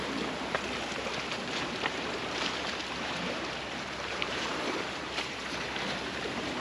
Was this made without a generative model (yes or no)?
no